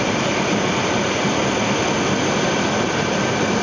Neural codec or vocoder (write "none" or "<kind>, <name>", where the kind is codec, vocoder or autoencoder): none